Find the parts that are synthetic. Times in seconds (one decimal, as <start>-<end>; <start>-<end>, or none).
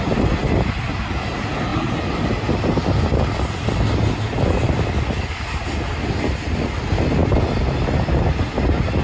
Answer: 0.0-0.4; 1.1-1.7; 6.1-9.0